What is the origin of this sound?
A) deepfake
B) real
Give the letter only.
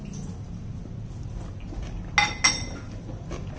B